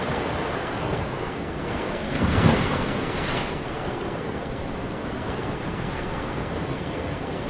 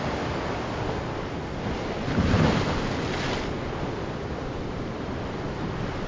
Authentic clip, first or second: second